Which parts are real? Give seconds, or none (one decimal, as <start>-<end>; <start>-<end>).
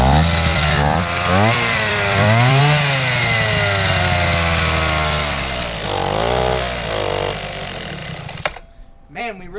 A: 0.0-0.5; 2.6-8.0; 9.2-9.6